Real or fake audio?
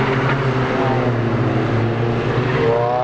real